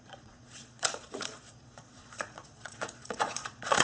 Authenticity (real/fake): fake